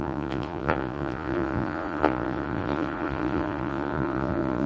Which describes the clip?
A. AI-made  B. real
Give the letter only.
A